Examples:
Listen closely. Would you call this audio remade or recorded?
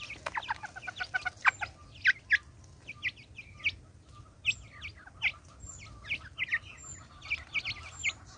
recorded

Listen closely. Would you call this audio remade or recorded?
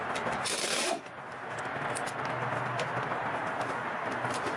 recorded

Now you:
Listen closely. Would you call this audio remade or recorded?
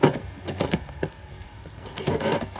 remade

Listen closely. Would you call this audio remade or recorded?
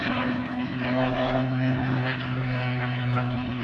remade